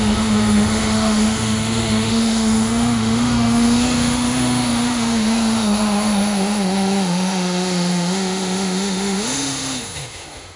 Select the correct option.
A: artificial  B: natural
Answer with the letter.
A